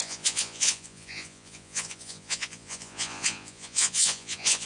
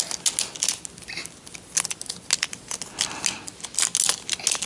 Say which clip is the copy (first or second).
first